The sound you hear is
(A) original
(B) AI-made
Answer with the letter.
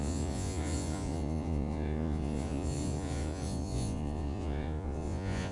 B